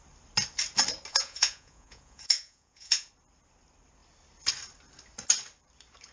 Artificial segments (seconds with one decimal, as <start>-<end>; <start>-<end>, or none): 1.1-3.1